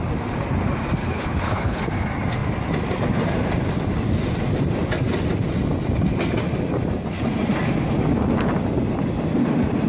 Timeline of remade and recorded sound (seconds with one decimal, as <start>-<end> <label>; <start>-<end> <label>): 0.0-1.0 recorded; 1.0-1.8 remade; 1.8-9.9 recorded